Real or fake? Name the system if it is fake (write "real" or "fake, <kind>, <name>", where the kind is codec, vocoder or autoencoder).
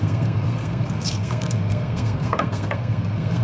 fake, codec, SNAC